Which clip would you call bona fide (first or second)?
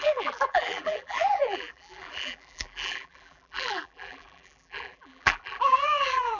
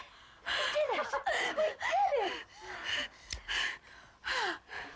second